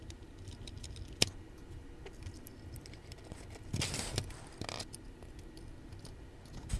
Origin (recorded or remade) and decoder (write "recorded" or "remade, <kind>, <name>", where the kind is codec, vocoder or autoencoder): recorded